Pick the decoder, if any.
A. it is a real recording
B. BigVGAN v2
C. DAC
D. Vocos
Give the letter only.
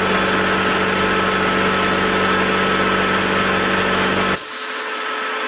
A